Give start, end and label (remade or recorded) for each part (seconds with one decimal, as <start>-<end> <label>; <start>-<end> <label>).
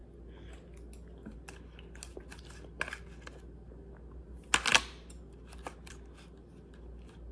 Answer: 0.0-7.3 recorded